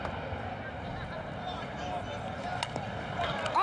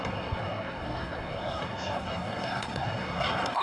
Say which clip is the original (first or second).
first